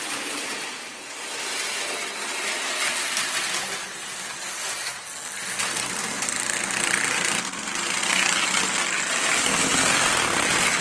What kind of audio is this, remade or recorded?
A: recorded